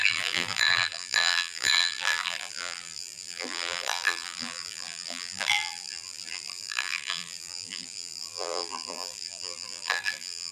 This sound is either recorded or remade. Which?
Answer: remade